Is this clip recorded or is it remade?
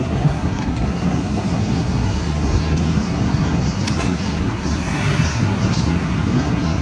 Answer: remade